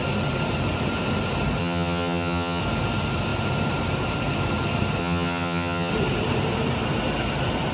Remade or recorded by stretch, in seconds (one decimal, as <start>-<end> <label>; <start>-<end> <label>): 0.0-1.6 recorded; 1.6-2.6 remade; 2.6-5.0 recorded; 5.0-5.9 remade; 5.9-7.7 recorded